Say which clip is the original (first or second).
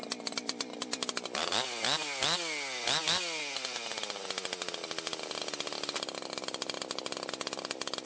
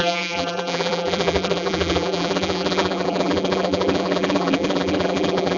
first